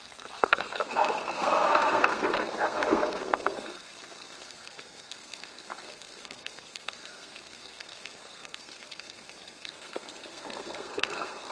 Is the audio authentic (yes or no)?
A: no